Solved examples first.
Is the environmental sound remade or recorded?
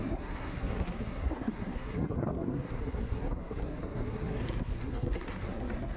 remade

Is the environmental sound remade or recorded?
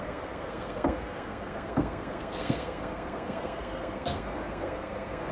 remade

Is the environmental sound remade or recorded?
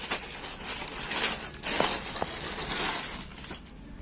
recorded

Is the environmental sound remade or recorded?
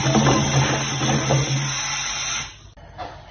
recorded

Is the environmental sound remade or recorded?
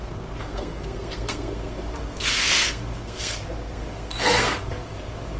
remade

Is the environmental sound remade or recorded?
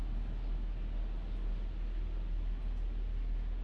recorded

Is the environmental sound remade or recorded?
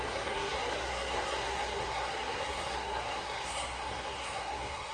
remade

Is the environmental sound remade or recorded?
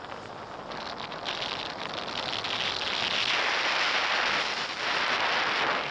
recorded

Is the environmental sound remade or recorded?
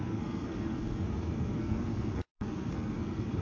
remade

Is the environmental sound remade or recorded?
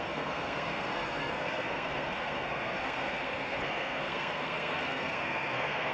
remade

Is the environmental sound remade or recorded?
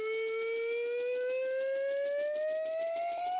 recorded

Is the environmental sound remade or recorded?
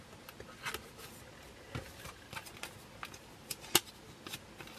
recorded